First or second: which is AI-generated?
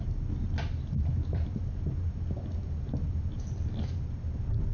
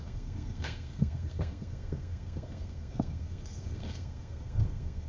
second